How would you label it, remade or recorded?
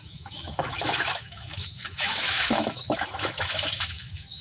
remade